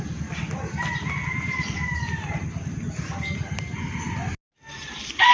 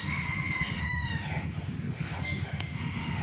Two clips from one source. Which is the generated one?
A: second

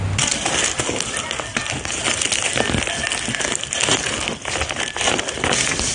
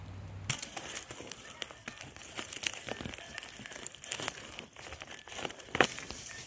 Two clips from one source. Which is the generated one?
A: second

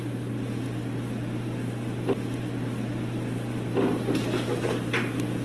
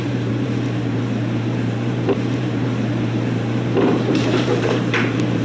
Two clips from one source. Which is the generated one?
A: second